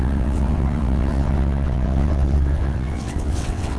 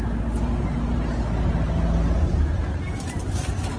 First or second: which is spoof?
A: first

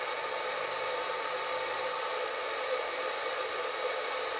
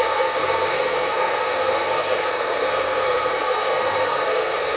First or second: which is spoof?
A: second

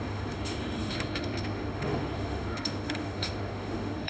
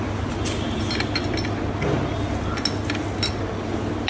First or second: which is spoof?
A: first